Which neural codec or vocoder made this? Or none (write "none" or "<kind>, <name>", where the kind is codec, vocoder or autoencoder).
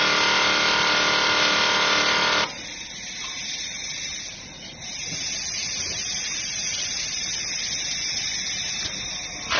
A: none